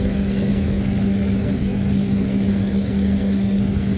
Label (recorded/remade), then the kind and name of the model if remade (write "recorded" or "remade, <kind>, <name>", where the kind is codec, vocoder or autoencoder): remade, codec, SNAC